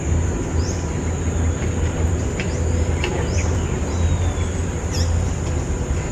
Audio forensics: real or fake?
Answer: fake